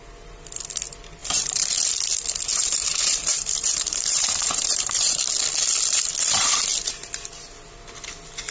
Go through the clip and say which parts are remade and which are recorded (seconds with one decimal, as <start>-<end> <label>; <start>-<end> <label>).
0.0-1.2 recorded; 1.2-1.7 remade; 1.7-2.5 recorded; 2.5-5.2 remade; 5.2-8.5 recorded